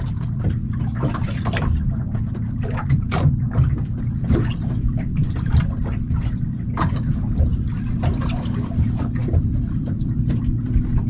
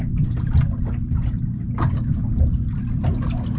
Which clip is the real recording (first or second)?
second